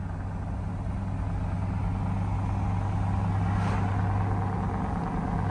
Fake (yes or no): no